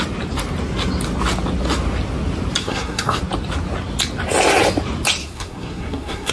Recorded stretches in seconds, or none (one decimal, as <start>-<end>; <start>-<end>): 0.0-2.6; 3.2-5.2